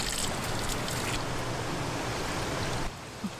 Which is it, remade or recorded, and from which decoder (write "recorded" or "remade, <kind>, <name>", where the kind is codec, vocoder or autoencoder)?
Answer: recorded